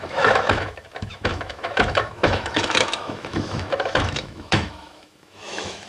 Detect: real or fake fake